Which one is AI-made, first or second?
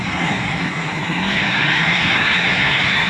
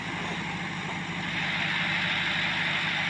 first